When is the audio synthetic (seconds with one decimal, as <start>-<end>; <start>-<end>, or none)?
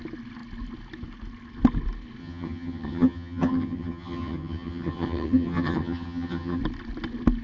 2.2-6.6